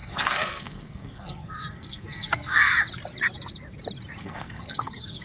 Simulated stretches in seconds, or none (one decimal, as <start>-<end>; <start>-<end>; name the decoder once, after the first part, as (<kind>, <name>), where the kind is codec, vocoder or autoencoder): 0.0-2.7 (codec, SNAC); 4.2-5.2